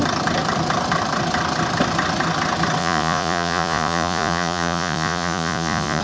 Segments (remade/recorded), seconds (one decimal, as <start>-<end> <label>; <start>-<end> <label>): 0.0-2.8 recorded; 2.8-6.0 remade